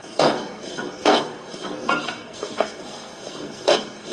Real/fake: fake